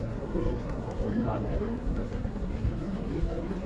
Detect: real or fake fake